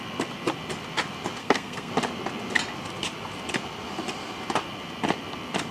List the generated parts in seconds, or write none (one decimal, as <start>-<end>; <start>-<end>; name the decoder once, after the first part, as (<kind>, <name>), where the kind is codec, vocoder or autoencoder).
1.4-1.9 (codec, SNAC)